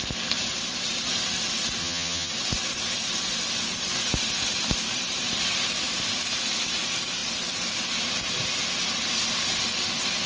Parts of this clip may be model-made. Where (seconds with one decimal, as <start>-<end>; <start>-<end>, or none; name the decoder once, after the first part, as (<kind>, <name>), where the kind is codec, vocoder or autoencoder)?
1.8-2.3 (vocoder, HiFi-GAN)